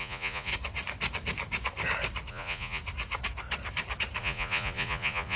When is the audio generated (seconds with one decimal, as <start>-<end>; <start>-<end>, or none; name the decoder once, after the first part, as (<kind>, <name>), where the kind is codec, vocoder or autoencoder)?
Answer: 0.0-0.5 (vocoder, Vocos); 2.3-2.8; 4.2-5.4

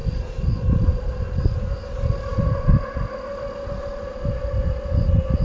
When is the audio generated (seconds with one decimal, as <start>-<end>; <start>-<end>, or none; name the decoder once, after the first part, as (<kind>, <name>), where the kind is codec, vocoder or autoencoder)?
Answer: none

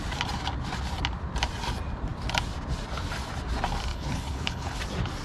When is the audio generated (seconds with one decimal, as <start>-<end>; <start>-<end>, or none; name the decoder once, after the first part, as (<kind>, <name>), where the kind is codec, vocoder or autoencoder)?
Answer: 3.9-4.8 (codec, HILCodec)

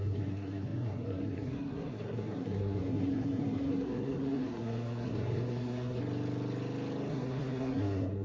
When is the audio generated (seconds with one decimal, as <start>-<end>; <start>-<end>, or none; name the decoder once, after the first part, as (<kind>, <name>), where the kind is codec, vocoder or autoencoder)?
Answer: 0.0-6.0 (codec, SNAC); 7.1-8.2

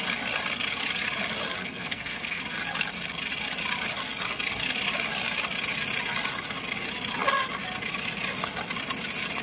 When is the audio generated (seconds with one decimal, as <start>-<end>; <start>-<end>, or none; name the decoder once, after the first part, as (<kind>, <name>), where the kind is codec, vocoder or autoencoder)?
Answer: 1.6-2.4 (codec, SNAC)

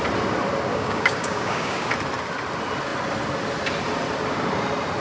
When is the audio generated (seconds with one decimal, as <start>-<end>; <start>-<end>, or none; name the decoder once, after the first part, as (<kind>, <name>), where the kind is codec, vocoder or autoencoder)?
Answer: 0.7-1.9 (codec, DAC)

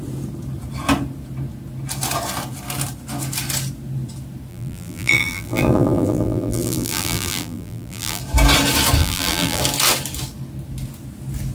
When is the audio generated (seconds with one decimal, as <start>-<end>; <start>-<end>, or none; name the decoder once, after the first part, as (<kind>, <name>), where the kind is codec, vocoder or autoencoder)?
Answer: 4.5-8.2 (vocoder, BigVGAN v2); 9.0-9.6

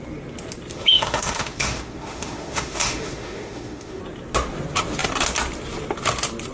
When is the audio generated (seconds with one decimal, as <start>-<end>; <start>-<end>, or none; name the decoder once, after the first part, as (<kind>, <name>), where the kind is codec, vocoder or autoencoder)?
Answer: 0.7-4.0 (autoencoder, DAC-VAE)